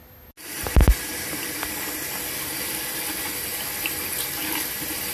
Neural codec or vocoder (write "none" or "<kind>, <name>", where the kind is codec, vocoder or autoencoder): none